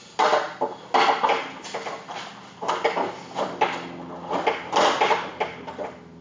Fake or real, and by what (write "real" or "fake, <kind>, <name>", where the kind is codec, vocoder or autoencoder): real